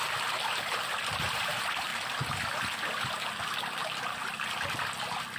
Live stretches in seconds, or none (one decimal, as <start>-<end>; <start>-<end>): 0.0-1.2; 1.9-5.4